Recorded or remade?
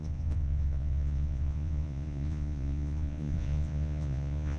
remade